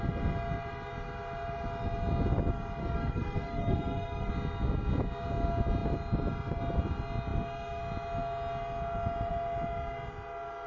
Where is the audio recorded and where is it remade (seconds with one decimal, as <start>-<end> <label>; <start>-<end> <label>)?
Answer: 0.0-2.8 recorded; 2.8-4.3 remade; 4.3-10.7 recorded